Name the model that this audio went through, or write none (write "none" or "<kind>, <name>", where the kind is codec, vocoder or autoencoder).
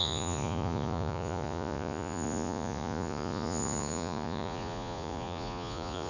vocoder, Vocos